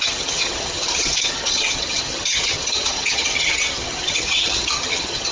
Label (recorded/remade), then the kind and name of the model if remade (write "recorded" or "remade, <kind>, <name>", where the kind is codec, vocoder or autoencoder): remade, vocoder, HiFi-GAN